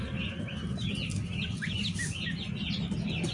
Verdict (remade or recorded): recorded